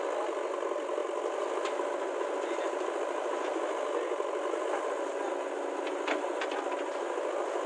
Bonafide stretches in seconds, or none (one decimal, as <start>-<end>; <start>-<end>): 0.0-7.7